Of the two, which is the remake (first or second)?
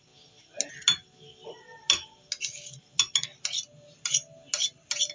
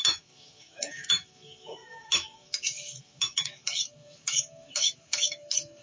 second